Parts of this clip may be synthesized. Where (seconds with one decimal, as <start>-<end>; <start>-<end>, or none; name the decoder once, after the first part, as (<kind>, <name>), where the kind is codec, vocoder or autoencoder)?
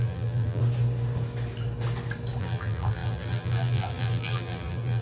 0.0-0.6 (vocoder, BigVGAN v2); 2.4-5.0